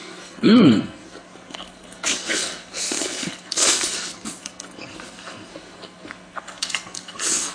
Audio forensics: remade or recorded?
remade